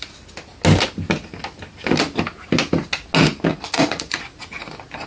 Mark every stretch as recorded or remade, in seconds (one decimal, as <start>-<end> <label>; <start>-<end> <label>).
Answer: 0.0-3.5 recorded; 3.5-4.2 remade; 4.2-5.1 recorded